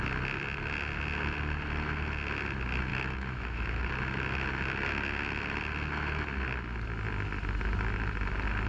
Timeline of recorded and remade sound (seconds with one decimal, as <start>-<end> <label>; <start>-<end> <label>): 0.0-2.9 recorded; 2.9-3.9 remade; 3.9-8.7 recorded